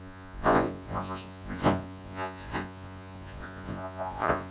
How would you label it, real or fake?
fake